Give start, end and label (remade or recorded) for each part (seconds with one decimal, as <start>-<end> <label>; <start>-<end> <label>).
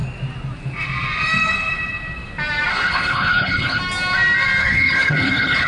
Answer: 0.0-2.7 recorded; 2.7-3.8 remade; 3.8-4.6 recorded; 4.6-5.7 remade